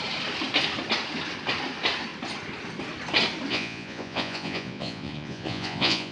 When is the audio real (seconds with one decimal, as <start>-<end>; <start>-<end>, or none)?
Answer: 0.0-3.5